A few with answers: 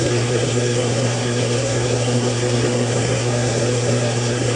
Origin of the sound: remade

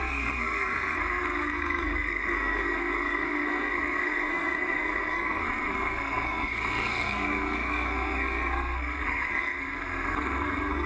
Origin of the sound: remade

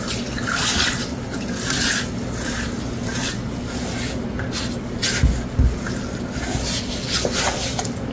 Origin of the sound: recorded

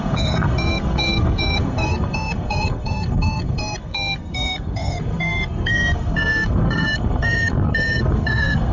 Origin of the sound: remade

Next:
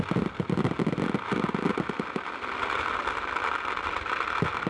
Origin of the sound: recorded